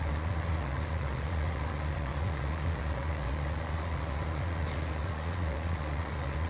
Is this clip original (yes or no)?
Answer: no